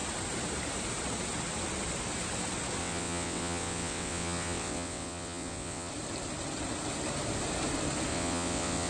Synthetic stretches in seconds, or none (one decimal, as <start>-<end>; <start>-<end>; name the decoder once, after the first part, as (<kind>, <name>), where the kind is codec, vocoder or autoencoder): 2.8-5.9 (vocoder, WaveNeXt); 8.1-8.9